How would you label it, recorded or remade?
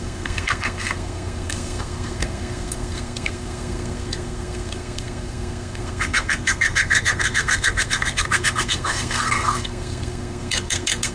remade